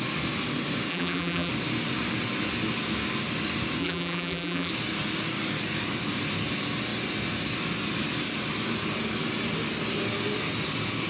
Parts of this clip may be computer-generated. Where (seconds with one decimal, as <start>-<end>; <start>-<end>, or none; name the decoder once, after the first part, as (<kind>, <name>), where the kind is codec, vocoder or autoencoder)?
0.9-1.5 (vocoder, BigVGAN v2); 3.8-4.7

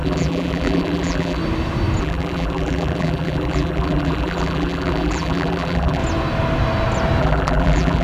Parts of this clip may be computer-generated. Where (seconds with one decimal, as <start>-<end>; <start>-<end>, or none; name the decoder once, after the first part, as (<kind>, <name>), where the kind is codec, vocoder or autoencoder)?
0.0-1.4 (vocoder, BigVGAN v2); 2.0-6.0; 7.2-8.0

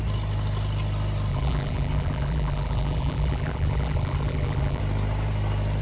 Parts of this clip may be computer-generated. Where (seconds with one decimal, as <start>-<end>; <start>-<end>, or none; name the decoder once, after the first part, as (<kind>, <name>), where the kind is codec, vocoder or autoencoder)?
1.3-4.8 (vocoder, BigVGAN v2)

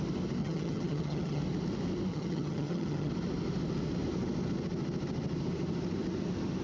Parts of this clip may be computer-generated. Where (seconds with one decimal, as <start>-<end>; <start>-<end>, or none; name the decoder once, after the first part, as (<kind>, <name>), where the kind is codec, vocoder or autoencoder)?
0.4-1.4 (vocoder, HiFi-GAN); 2.1-3.1

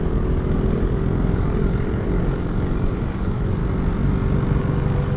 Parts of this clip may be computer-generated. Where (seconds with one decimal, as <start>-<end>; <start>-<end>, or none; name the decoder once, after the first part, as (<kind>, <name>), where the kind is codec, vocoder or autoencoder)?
0.0-3.6 (codec, DAC); 4.6-5.2

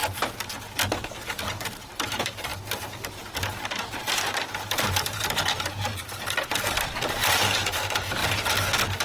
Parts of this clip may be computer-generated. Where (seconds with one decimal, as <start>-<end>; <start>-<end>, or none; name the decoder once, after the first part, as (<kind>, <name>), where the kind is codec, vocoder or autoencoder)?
1.5-2.5 (vocoder, BigVGAN v2); 3.5-5.9; 6.5-8.2

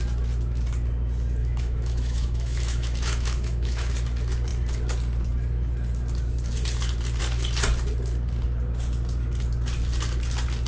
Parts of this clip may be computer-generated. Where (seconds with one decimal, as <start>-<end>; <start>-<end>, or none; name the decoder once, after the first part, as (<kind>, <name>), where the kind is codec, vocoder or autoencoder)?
1.4-3.9 (autoencoder, DAC-VAE)